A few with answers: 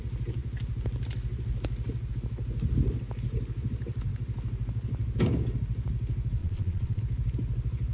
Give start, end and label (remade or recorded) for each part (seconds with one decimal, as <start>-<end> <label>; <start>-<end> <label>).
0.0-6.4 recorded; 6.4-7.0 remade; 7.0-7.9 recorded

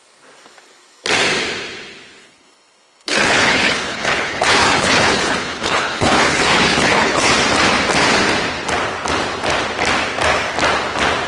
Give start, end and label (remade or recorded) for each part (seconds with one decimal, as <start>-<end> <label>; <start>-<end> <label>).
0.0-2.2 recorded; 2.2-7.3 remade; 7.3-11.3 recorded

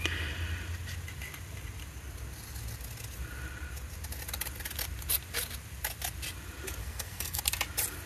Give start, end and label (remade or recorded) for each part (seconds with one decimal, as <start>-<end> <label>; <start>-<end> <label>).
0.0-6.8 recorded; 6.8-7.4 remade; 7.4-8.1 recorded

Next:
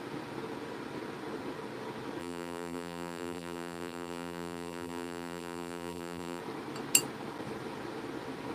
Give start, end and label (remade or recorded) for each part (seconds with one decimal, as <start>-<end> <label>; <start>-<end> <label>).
0.0-2.2 recorded; 2.2-6.4 remade; 6.4-8.5 recorded

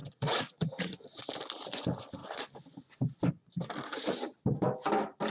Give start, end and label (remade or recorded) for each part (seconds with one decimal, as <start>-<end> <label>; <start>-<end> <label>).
0.0-1.3 remade; 1.3-5.3 recorded